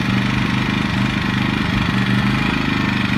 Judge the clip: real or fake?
real